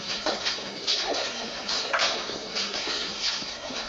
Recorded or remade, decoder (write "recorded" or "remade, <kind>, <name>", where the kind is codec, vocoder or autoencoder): remade, codec, SNAC